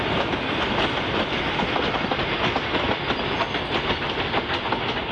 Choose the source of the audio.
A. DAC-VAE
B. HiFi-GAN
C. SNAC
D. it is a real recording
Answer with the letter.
D